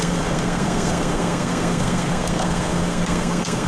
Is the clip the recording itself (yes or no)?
no